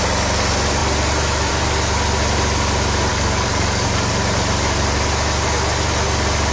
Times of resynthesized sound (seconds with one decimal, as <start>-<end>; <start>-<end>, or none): 3.1-4.1